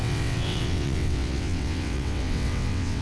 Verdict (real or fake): fake